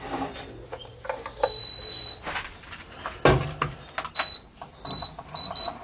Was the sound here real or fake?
real